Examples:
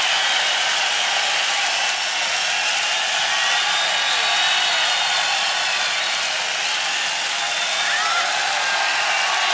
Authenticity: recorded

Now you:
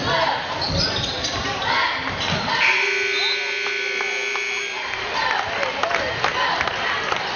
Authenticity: recorded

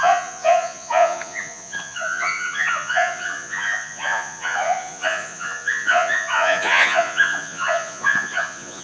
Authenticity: remade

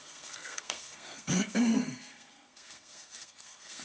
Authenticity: remade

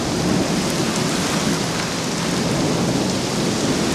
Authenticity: recorded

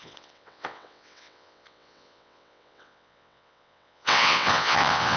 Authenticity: remade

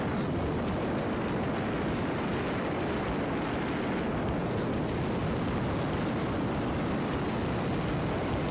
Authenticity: recorded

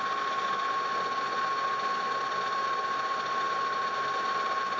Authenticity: recorded